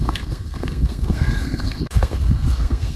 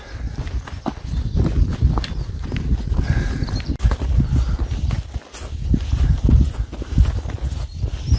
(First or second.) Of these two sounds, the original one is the second